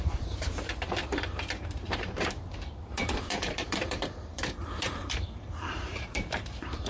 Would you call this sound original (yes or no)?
no